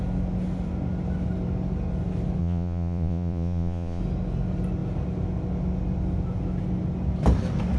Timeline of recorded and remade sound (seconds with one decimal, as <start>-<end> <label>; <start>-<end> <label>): 0.0-2.4 recorded; 2.4-4.0 remade; 4.0-7.8 recorded